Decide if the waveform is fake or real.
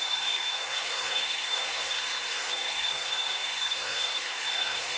fake